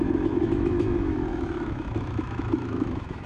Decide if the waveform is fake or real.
fake